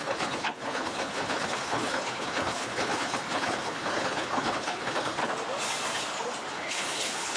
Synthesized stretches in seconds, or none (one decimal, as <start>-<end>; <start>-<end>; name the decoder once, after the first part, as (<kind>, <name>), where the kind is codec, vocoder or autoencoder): 0.0-5.2 (codec, HILCodec); 6.5-7.4